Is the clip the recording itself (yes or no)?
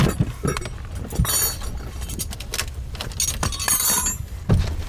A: yes